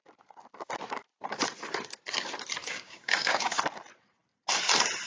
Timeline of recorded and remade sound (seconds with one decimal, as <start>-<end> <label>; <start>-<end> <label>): 0.0-2.6 recorded; 2.6-3.6 remade; 3.6-5.1 recorded